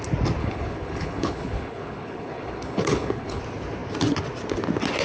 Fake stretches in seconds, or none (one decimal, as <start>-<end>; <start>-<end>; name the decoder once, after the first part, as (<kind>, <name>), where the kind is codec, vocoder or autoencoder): 0.4-3.4 (codec, HILCodec)